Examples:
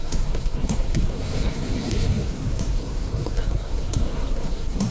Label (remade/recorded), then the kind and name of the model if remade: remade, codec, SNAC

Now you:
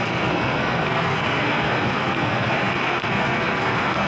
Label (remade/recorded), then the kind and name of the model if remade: remade, codec, SNAC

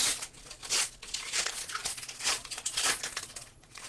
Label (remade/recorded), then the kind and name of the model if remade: remade, vocoder, Vocos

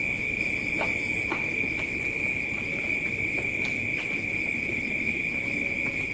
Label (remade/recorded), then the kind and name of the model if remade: recorded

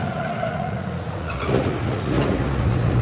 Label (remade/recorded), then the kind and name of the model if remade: remade, vocoder, Vocos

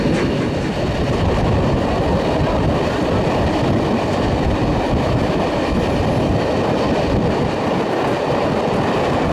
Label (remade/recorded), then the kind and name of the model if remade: recorded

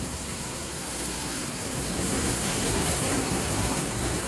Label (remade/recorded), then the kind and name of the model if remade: remade, codec, SNAC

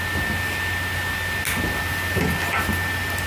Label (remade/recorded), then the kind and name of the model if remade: recorded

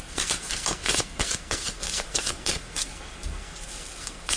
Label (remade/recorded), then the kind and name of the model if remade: remade, codec, SNAC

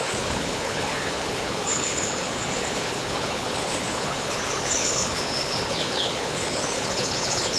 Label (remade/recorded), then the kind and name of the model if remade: remade, codec, HILCodec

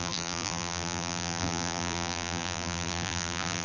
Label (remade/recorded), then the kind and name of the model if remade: remade, vocoder, BigVGAN v2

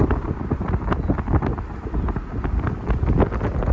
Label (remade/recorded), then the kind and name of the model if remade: recorded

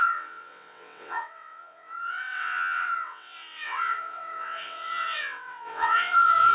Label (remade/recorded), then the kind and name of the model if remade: remade, vocoder, WaveNeXt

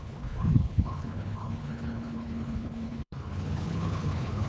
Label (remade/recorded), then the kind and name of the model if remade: remade, codec, HILCodec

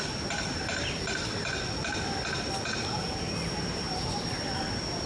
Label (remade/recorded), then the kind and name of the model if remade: recorded